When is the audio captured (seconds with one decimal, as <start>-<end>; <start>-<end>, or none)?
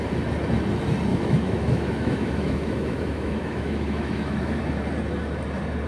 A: 0.0-1.1; 4.6-5.9